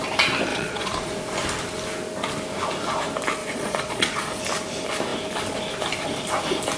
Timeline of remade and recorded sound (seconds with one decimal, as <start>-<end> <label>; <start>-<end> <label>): 0.0-0.5 recorded; 0.5-1.1 remade; 1.1-3.4 recorded; 3.4-4.4 remade; 4.4-6.8 recorded